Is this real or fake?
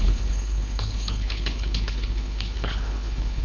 fake